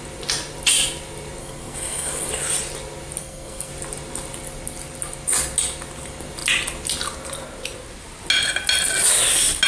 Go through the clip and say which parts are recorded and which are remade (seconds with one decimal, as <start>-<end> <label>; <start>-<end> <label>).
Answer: 0.0-1.4 recorded; 1.4-2.3 remade; 2.3-3.2 recorded; 3.2-3.7 remade; 3.7-9.7 recorded